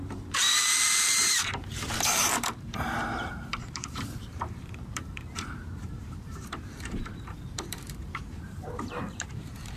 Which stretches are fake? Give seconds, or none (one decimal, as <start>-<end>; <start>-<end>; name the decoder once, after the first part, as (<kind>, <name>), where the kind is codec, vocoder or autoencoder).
0.0-9.8 (vocoder, BigVGAN v2)